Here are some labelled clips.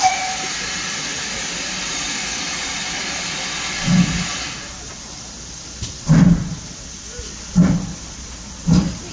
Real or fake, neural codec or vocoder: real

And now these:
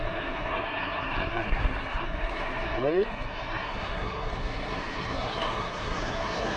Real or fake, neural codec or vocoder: fake, codec, SNAC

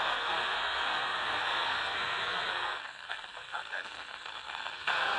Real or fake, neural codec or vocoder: fake, codec, SNAC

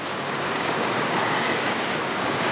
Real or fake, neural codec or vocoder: fake, codec, DAC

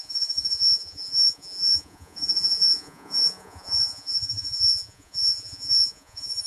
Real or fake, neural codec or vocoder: fake, vocoder, Vocos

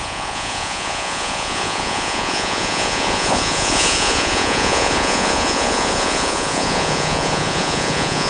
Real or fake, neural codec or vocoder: fake, vocoder, Vocos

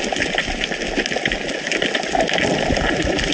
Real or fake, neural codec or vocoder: real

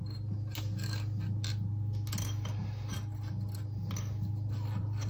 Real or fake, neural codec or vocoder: real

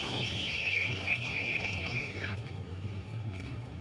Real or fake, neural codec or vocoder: fake, codec, SNAC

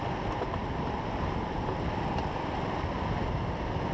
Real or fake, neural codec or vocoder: real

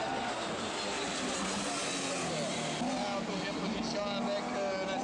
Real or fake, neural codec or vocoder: real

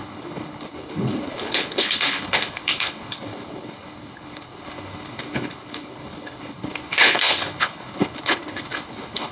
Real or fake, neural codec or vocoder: fake, codec, HILCodec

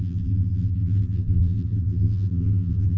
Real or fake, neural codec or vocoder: fake, vocoder, BigVGAN v2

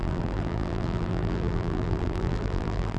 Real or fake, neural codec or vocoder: fake, vocoder, BigVGAN v2